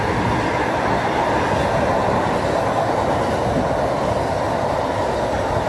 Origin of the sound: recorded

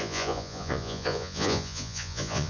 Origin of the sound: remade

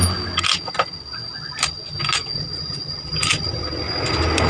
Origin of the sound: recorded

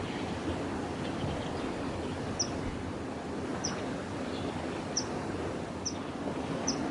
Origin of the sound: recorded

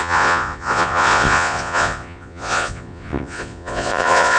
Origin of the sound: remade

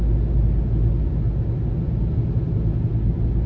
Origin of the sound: recorded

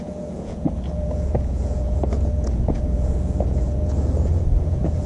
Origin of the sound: remade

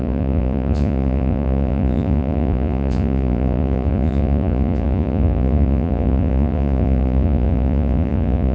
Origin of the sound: remade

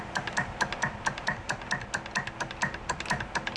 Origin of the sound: recorded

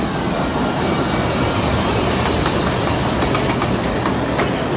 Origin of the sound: recorded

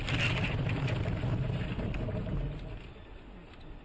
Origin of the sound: recorded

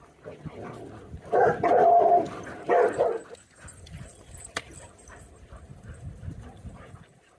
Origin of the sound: recorded